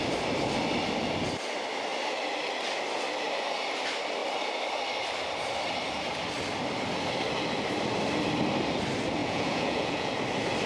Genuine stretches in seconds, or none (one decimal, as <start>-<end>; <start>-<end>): 0.0-9.2; 10.1-10.7